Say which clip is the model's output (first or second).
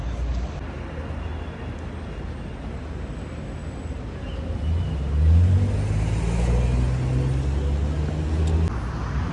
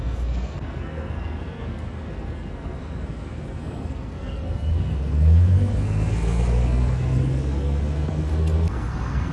second